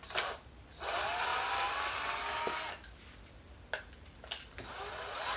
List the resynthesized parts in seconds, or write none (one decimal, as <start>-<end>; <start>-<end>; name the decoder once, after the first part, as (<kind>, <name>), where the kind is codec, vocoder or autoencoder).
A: none